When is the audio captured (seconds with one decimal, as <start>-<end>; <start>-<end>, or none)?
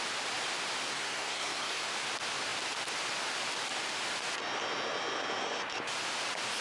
0.0-0.9; 1.8-6.6